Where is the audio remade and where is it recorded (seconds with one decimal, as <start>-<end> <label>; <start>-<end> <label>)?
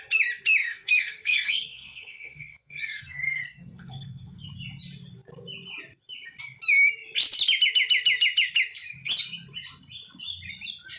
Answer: 0.0-0.6 recorded; 0.6-4.5 remade; 4.5-11.0 recorded